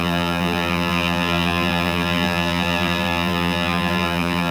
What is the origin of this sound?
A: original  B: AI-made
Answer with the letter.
B